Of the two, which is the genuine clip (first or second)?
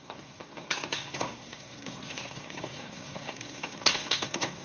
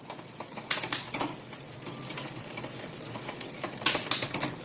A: second